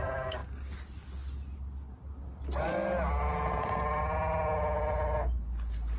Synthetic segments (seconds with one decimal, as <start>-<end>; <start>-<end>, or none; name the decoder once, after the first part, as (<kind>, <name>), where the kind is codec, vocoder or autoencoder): none